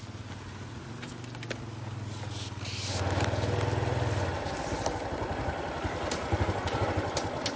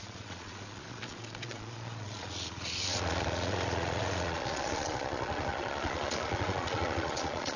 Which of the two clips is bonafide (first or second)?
first